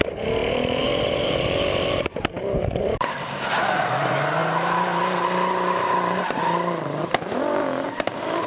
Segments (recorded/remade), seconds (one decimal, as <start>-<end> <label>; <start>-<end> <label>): 0.0-0.4 recorded; 0.4-3.8 remade; 3.8-4.4 recorded; 4.4-7.0 remade; 7.0-7.6 recorded; 7.6-8.5 remade